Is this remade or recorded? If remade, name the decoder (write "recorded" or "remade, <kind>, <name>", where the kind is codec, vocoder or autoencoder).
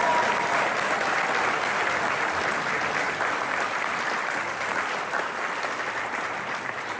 recorded